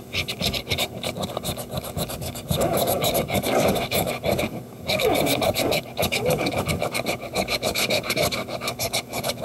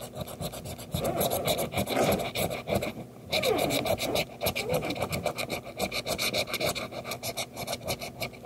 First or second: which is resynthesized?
first